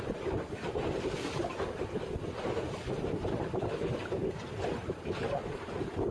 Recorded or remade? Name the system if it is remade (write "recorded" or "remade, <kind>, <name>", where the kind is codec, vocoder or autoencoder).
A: recorded